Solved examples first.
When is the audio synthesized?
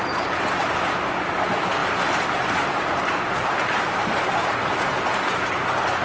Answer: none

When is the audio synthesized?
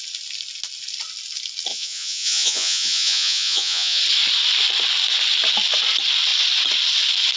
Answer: 1.7-4.0 (vocoder, Vocos)